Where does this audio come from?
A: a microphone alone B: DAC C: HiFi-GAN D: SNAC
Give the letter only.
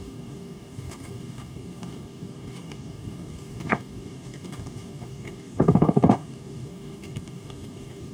B